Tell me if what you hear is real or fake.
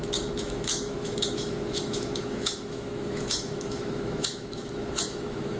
fake